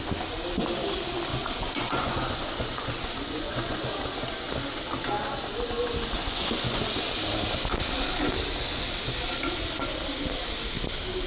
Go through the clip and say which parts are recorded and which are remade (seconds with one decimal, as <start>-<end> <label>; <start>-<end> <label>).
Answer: 0.0-1.3 recorded; 1.3-3.8 remade; 3.8-6.2 recorded; 6.2-6.8 remade; 6.8-11.3 recorded